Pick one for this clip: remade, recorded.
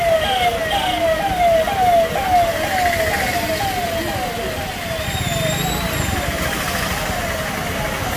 recorded